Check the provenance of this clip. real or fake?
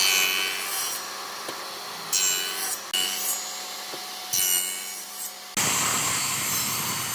real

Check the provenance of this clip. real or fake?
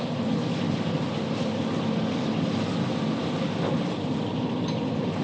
real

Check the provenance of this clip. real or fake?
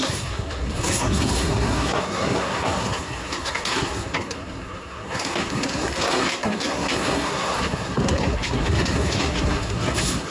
fake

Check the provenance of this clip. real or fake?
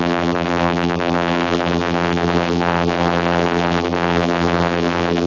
fake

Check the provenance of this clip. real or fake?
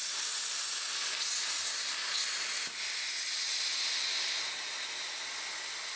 real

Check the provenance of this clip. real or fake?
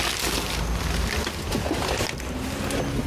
real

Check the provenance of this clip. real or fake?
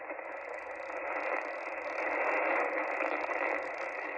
real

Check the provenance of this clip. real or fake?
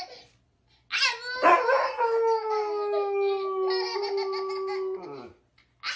real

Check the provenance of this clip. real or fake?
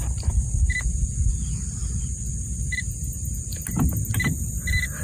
real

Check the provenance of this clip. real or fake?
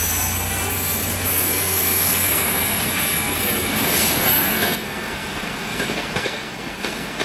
fake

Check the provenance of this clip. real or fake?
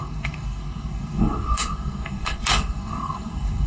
fake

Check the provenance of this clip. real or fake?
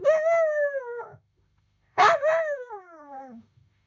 fake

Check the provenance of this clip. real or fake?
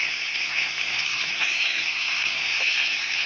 fake